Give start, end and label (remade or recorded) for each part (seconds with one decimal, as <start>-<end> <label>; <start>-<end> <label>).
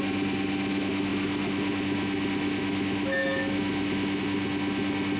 0.0-5.2 recorded